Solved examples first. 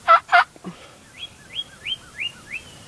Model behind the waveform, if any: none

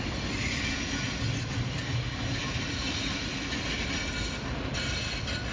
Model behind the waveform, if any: none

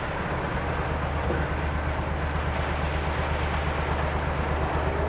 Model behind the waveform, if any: none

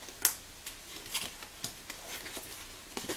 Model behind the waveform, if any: none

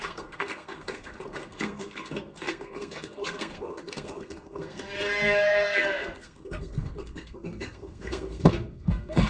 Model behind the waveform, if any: codec, SNAC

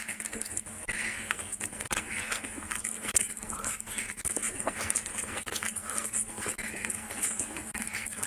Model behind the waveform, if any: codec, SNAC